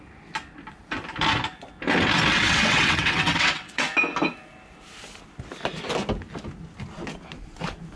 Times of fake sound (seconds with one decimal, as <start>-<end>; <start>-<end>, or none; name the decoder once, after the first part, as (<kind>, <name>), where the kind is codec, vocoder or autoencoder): 2.3-3.9 (vocoder, WaveNeXt)